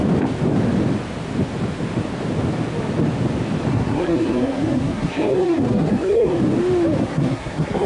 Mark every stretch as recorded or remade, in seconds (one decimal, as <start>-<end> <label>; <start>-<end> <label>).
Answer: 0.0-3.7 recorded; 3.7-6.4 remade; 6.4-7.0 recorded; 7.0-7.9 remade